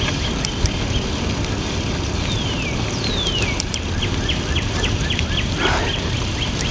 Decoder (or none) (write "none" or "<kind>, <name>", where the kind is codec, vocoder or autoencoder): none